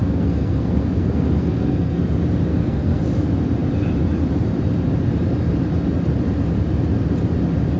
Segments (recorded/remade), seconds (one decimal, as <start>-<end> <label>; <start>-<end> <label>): 0.0-2.0 remade; 2.0-2.5 recorded; 2.5-3.0 remade; 3.0-7.8 recorded